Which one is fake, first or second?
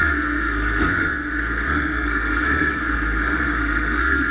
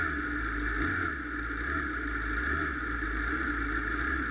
first